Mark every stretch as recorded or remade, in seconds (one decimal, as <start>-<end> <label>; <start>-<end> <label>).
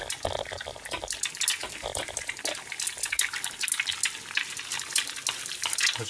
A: 0.0-6.1 recorded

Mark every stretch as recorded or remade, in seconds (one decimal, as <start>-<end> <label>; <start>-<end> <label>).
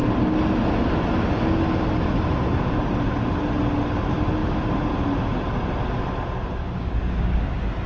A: 0.0-6.6 recorded; 6.6-7.4 remade; 7.4-7.9 recorded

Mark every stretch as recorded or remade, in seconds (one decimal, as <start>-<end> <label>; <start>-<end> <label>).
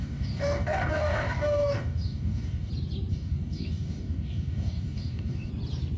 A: 0.0-2.7 remade; 2.7-3.1 recorded; 3.1-5.5 remade; 5.5-6.0 recorded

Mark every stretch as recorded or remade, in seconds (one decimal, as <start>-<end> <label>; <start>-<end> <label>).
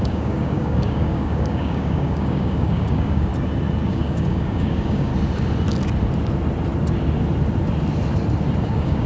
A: 0.0-3.3 remade; 3.3-3.9 recorded; 3.9-5.1 remade; 5.1-8.6 recorded; 8.6-9.1 remade